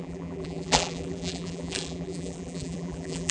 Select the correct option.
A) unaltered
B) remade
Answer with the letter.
B